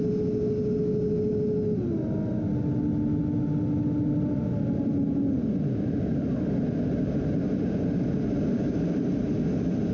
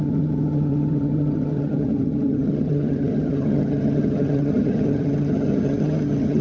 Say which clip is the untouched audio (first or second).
first